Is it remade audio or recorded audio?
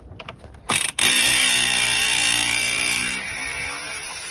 remade